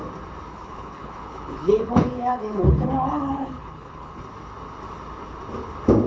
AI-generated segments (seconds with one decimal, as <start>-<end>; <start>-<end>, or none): 0.5-4.2